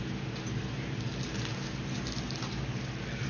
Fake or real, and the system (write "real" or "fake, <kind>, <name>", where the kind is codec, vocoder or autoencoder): real